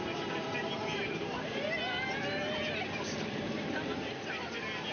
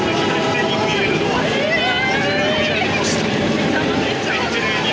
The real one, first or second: second